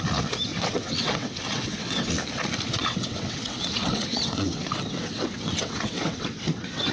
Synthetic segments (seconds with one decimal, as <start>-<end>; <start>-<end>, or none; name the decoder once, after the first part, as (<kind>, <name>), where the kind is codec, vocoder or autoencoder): 0.5-2.1 (vocoder, WaveNeXt); 2.8-6.9